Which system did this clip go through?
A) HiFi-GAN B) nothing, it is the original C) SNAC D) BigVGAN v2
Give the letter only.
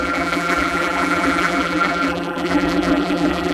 D